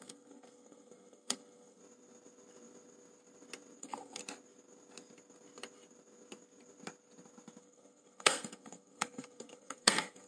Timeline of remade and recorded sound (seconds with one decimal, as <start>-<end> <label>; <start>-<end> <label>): 0.0-1.8 remade; 1.8-3.8 recorded; 3.8-4.2 remade; 4.2-7.6 recorded; 7.6-10.3 remade